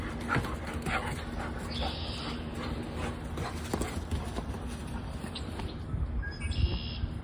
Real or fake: real